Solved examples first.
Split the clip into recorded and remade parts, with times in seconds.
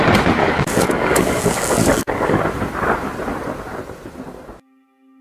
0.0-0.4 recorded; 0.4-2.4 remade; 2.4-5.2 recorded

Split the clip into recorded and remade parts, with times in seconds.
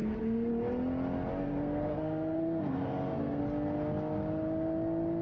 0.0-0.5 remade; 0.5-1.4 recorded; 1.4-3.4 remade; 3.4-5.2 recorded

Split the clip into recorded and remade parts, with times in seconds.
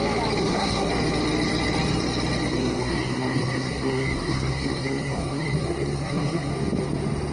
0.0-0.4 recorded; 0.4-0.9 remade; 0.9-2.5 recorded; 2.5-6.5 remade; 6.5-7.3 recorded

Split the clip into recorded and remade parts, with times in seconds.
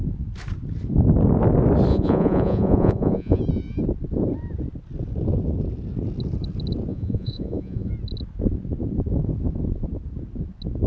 0.0-1.9 recorded; 1.9-3.4 remade; 3.4-6.9 recorded; 6.9-7.9 remade; 7.9-10.9 recorded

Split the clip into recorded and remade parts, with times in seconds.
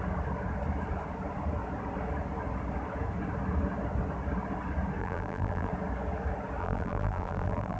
0.0-5.0 recorded; 5.0-5.7 remade; 5.7-6.6 recorded; 6.6-7.8 remade